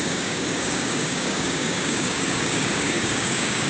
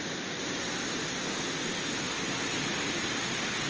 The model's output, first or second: first